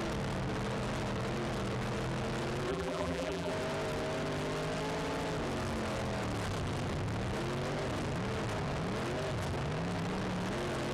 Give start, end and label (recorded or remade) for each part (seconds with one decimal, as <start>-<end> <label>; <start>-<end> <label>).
0.0-2.7 recorded; 2.7-3.5 remade; 3.5-10.9 recorded